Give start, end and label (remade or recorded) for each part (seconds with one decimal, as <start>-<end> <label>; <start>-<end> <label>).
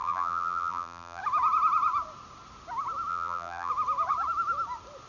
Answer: 0.0-1.2 remade; 1.2-3.1 recorded; 3.1-3.7 remade; 3.7-5.1 recorded